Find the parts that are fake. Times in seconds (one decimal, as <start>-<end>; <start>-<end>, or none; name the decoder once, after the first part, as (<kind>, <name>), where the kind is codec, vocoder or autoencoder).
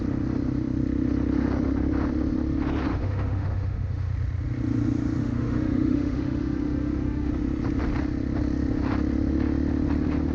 2.9-4.1 (autoencoder, DAC-VAE); 5.2-7.3